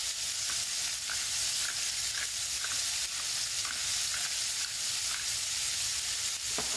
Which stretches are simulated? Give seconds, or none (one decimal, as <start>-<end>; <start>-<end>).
none